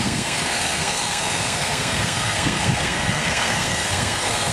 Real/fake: fake